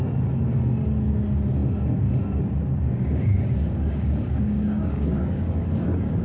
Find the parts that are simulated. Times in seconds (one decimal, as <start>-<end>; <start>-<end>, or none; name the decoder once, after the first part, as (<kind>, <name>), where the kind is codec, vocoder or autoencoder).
2.8-6.2 (codec, DAC)